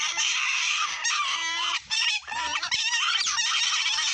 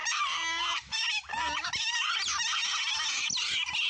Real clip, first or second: second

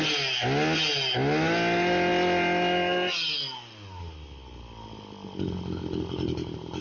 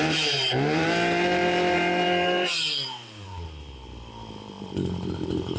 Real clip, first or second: first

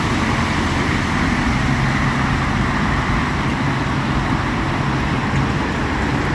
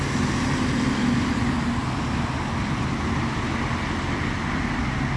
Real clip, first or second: second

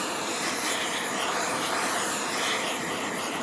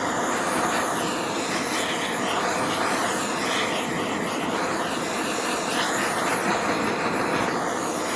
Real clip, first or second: second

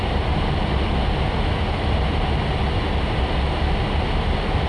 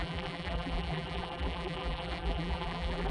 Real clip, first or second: first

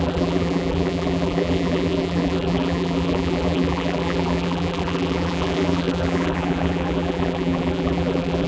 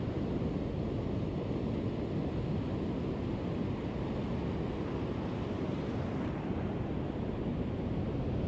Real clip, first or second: second